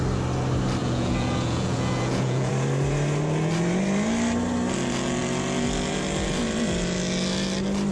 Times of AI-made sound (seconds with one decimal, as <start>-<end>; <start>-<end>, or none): 0.8-2.5